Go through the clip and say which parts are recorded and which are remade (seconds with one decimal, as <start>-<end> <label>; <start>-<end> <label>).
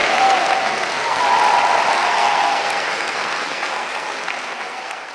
0.0-1.2 remade; 1.2-1.9 recorded; 1.9-5.1 remade